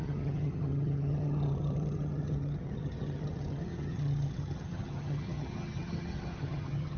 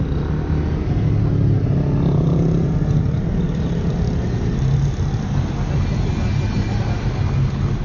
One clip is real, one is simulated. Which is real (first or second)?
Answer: second